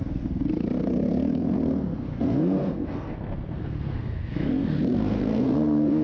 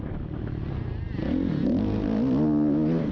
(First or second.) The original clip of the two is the second